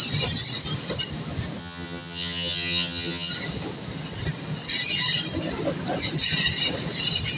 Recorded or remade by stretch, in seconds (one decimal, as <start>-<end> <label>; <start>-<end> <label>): 0.0-1.6 recorded; 1.6-3.3 remade; 3.3-7.4 recorded